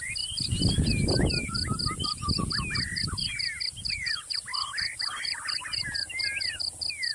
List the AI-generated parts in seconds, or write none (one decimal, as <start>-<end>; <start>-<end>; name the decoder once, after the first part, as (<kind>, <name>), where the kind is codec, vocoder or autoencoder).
none